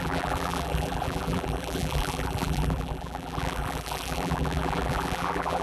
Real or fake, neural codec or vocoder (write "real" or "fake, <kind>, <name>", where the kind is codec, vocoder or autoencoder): fake, vocoder, BigVGAN v2